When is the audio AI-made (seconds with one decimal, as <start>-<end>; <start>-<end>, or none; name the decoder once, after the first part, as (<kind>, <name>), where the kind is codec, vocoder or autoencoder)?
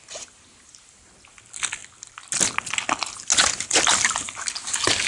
none